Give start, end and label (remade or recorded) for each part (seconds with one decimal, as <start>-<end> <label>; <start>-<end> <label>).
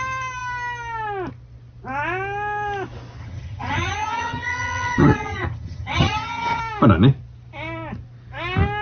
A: 0.0-3.2 recorded; 3.2-6.6 remade; 6.6-8.8 recorded